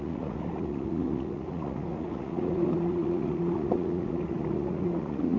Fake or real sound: fake